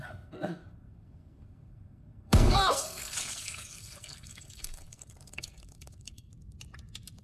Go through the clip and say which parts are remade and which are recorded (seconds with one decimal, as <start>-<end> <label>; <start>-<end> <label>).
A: 0.0-6.3 remade; 6.3-7.2 recorded